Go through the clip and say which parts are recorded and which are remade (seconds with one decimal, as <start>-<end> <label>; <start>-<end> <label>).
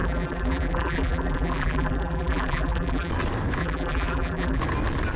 0.0-3.1 remade; 3.1-3.6 recorded; 3.6-4.6 remade; 4.6-5.2 recorded